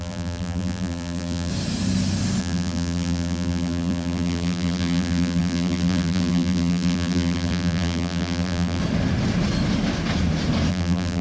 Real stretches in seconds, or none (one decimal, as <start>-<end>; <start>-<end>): 1.5-2.4; 8.8-10.7